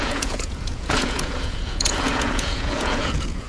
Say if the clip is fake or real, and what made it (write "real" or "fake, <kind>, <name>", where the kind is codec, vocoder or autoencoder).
fake, vocoder, Vocos